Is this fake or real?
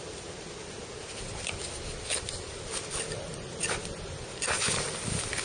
real